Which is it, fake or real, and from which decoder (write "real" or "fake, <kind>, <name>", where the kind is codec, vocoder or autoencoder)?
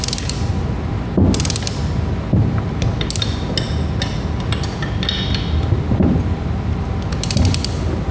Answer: real